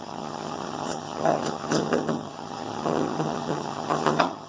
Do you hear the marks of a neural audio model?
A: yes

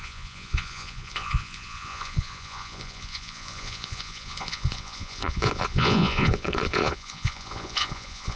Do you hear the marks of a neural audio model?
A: yes